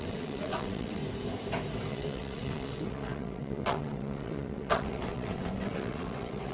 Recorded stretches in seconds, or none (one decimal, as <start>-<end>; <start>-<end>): 1.0-1.9